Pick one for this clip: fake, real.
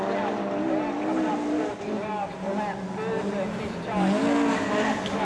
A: real